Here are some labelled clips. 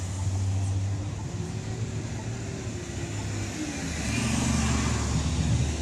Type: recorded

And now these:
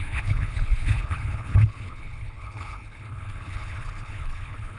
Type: remade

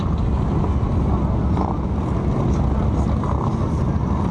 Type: recorded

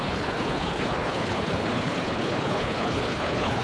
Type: remade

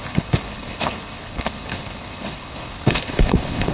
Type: remade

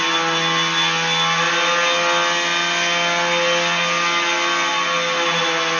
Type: recorded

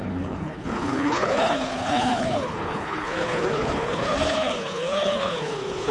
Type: remade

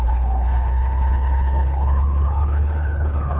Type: remade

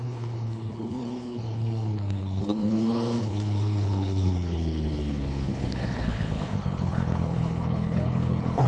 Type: remade